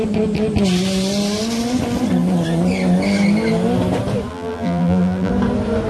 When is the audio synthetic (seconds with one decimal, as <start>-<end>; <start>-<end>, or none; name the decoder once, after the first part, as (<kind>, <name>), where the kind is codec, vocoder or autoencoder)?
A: 4.3-5.3 (vocoder, BigVGAN v2)